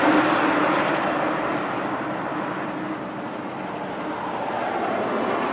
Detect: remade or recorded recorded